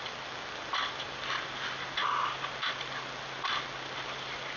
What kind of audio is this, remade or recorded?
recorded